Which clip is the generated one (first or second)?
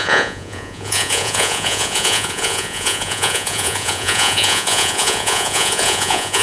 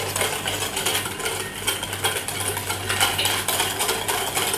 first